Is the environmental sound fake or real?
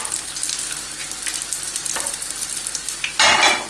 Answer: real